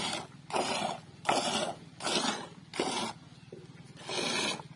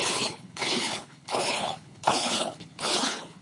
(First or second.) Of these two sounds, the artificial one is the second